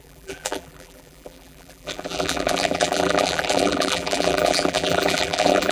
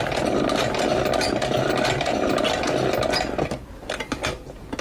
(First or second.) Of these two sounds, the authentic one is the second